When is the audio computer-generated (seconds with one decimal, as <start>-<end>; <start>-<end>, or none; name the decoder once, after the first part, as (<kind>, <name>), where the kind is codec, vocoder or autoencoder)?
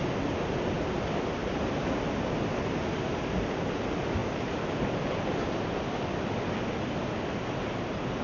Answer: none